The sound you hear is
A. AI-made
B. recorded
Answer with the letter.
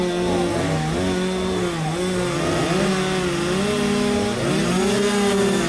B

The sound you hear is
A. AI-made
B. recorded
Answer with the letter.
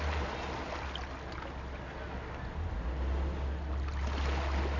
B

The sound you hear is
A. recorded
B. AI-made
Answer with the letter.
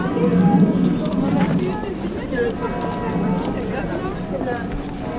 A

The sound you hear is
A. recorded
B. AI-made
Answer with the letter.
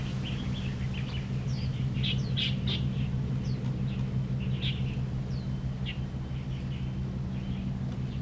A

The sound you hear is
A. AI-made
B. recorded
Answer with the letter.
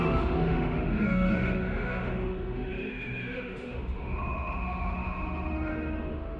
A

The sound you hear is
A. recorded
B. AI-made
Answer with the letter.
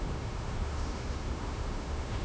B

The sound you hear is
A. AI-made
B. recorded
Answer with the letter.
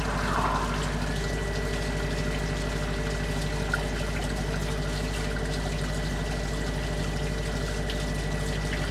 B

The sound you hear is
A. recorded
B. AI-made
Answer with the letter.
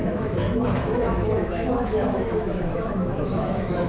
B